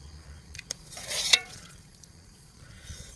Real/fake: fake